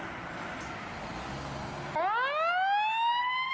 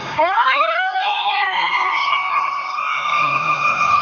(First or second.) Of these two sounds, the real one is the first